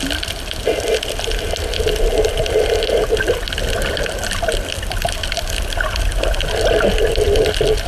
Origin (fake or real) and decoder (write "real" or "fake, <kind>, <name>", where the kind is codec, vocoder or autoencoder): real